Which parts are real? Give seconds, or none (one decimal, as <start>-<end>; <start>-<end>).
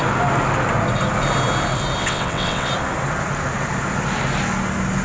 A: 0.0-2.0; 2.7-5.0